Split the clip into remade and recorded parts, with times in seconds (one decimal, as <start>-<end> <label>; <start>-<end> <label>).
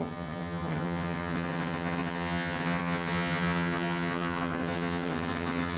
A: 0.0-5.8 remade